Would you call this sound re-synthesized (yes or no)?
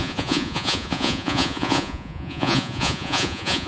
yes